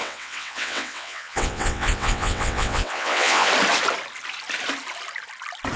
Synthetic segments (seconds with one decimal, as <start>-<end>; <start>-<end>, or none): 0.0-3.5